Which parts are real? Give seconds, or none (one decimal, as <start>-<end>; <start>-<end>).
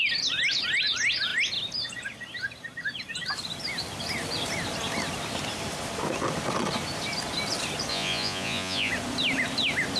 0.0-7.9; 8.9-10.0